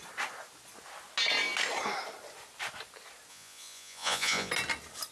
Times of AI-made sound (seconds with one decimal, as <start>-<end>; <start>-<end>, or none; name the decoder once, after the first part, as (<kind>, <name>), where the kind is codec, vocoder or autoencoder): 3.3-4.5 (vocoder, Vocos)